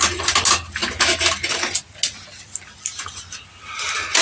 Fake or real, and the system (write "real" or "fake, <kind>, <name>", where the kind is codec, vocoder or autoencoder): real